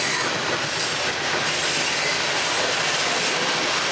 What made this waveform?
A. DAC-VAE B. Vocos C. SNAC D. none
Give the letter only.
D